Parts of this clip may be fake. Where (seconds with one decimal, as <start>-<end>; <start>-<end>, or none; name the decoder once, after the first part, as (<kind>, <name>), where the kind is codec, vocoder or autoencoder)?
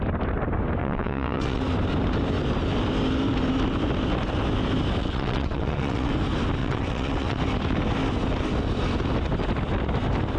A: 0.8-1.6 (vocoder, WaveNeXt); 5.0-6.1; 6.6-7.4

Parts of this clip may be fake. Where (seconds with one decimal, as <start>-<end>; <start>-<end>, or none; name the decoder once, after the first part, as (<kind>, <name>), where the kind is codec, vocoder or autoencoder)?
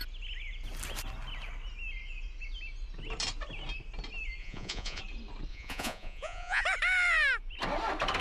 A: 4.4-5.0 (vocoder, Vocos); 5.5-6.6